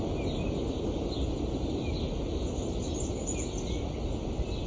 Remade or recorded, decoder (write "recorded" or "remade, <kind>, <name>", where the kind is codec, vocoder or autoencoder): recorded